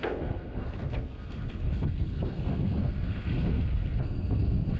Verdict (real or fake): fake